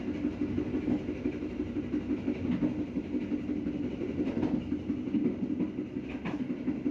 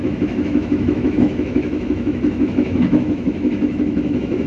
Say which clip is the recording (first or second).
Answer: first